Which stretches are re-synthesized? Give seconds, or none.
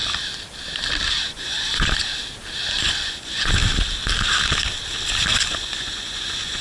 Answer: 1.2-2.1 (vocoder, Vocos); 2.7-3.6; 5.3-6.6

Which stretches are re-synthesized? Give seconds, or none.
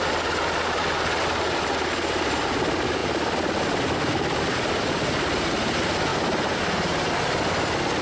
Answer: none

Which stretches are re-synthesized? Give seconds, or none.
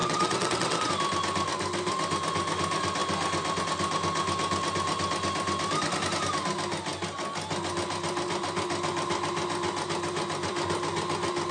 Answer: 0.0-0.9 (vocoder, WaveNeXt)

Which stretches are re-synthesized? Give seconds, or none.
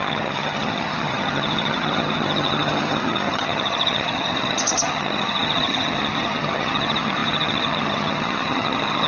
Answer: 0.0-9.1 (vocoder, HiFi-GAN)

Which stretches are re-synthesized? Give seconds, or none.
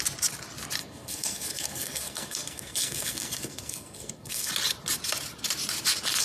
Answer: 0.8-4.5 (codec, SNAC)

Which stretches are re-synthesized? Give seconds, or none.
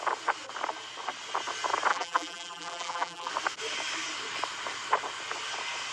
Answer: 1.9-3.3 (vocoder, BigVGAN v2)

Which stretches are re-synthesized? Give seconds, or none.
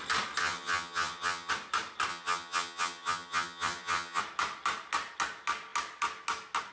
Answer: 0.4-1.5 (vocoder, HiFi-GAN); 2.1-4.2